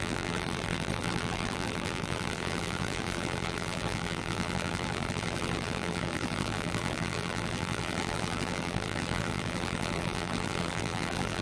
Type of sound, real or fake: fake